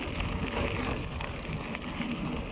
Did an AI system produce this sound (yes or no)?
no